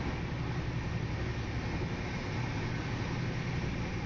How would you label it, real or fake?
real